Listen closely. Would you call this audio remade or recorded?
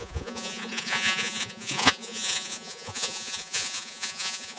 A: remade